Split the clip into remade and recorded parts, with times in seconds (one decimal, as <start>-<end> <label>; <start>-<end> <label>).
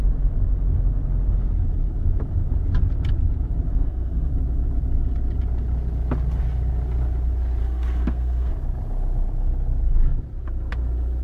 0.0-3.7 recorded; 3.7-4.3 remade; 4.3-7.6 recorded; 7.6-8.5 remade; 8.5-11.2 recorded